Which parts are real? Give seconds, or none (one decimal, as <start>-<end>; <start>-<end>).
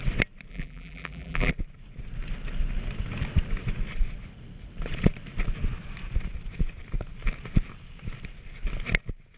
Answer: 0.0-0.5; 1.5-9.4